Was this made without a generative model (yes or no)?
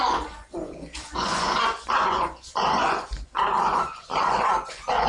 no